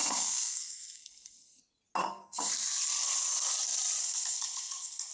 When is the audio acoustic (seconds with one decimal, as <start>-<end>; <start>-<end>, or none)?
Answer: 1.6-2.0; 2.5-4.0